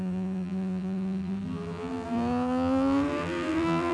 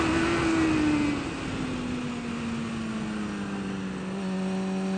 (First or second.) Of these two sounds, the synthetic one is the first